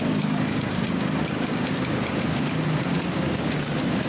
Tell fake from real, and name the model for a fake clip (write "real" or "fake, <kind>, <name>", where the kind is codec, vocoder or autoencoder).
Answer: fake, codec, DAC